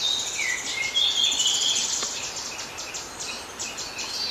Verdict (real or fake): real